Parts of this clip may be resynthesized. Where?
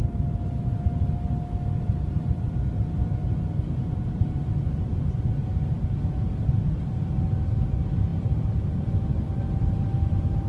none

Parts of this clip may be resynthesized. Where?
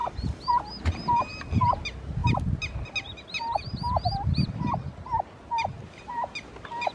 0.0-0.6 (vocoder, BigVGAN v2)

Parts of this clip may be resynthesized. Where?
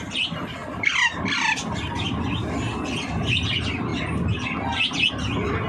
none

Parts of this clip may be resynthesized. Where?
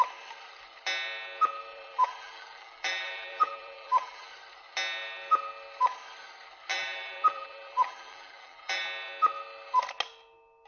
1.7-4.3 (vocoder, BigVGAN v2); 6.7-8.8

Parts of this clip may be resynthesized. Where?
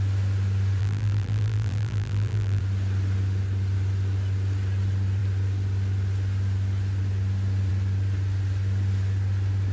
0.8-2.6 (vocoder, BigVGAN v2)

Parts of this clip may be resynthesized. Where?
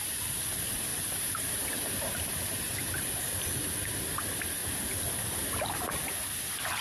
0.0-4.6 (vocoder, BigVGAN v2)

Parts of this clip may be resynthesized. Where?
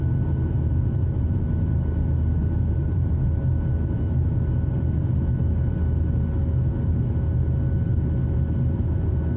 0.9-1.4 (vocoder, BigVGAN v2); 2.4-3.1